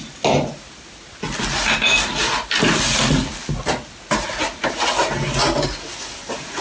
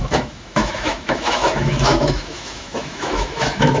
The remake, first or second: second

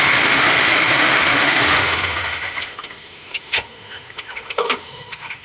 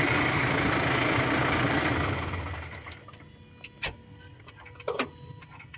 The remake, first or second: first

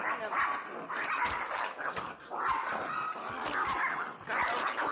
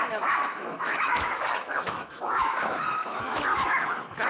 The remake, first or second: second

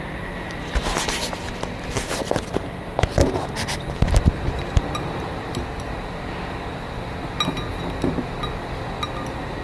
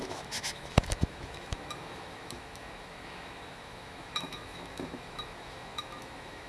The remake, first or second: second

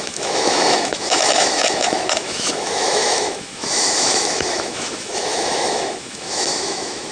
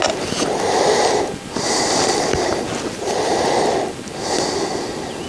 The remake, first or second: first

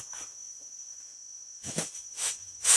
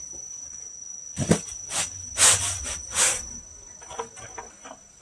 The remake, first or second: first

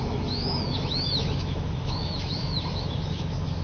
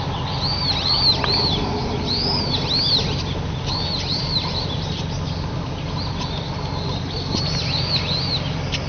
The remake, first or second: first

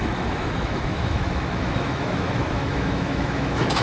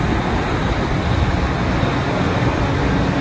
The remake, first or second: first